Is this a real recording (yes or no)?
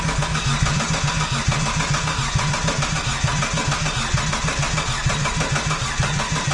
yes